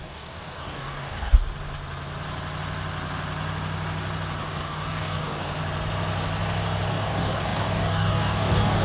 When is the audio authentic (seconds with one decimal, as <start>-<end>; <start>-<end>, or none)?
1.4-4.4; 5.5-6.9